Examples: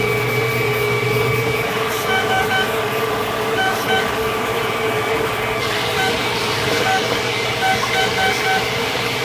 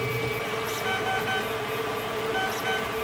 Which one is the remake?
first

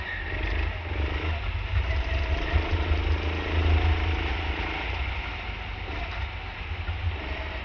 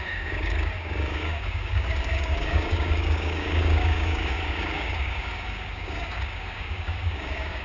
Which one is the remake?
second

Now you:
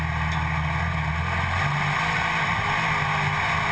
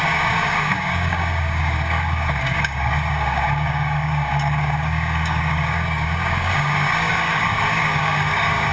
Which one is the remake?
second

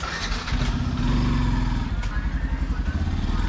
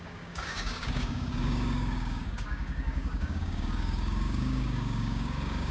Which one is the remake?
second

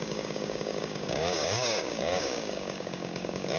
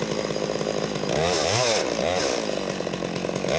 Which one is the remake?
first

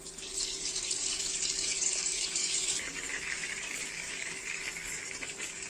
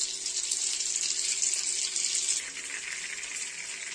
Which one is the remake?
first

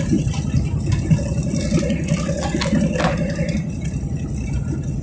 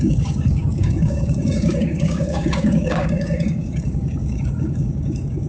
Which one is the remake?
second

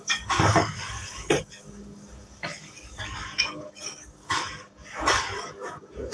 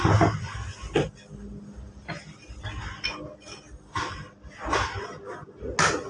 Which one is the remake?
first